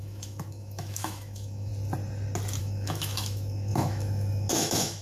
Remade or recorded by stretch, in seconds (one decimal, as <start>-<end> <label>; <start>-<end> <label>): 0.0-1.7 remade; 1.7-2.6 recorded; 2.6-5.0 remade